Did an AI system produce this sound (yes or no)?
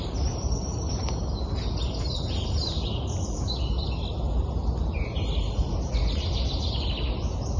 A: no